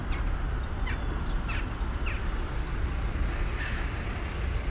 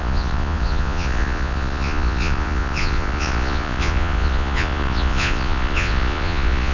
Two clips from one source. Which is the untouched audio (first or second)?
first